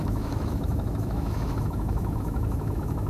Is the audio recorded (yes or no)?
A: no